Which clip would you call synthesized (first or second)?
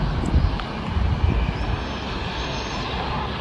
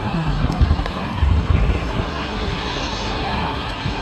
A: second